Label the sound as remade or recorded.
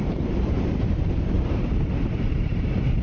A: remade